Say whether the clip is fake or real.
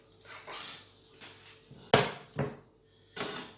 real